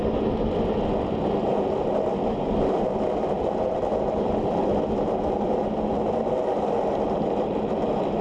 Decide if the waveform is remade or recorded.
recorded